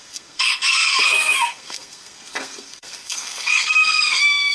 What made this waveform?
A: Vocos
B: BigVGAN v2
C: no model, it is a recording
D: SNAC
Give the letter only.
D